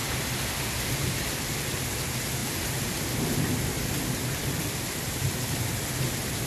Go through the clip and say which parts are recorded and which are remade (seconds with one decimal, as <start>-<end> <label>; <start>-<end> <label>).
0.0-1.1 remade; 1.1-2.4 recorded; 2.4-6.5 remade